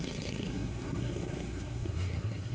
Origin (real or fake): fake